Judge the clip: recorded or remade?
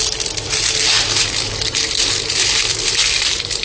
recorded